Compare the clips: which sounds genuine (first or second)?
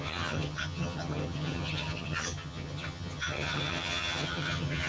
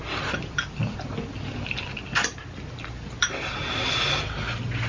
second